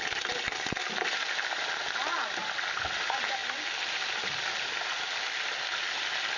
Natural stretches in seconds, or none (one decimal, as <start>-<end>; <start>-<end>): 0.0-6.4